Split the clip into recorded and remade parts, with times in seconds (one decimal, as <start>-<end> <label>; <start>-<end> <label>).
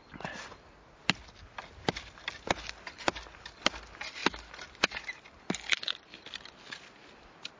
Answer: 0.0-7.6 recorded